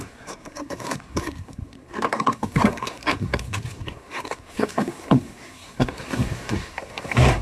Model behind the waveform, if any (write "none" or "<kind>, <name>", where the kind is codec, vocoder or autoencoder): codec, SNAC